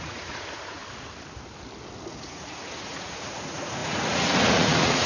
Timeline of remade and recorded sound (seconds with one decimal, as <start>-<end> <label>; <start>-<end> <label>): 0.0-0.8 remade; 0.8-2.1 recorded; 2.1-5.1 remade